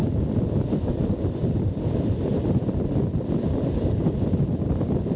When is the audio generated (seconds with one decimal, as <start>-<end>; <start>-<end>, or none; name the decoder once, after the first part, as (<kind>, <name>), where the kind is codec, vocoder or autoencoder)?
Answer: none

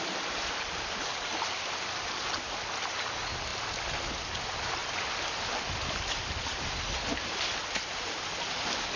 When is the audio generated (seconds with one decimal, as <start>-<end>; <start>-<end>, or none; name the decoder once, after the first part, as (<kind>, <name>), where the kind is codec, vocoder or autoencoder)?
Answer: none